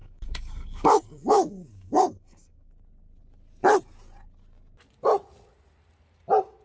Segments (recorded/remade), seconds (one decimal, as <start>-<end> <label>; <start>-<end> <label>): 0.0-2.7 remade; 2.7-6.6 recorded